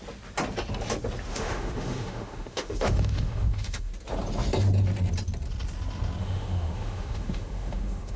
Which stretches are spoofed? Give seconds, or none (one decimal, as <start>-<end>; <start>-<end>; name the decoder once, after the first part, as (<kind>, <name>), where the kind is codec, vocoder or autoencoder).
1.3-3.9 (autoencoder, DAC-VAE); 6.2-8.2